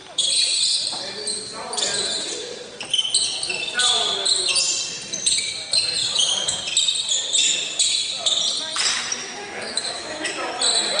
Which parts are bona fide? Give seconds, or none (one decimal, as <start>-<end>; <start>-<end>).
0.0-6.0; 6.6-9.2; 10.5-11.0